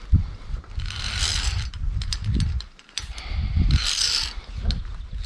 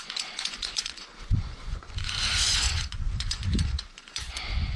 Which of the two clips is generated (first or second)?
second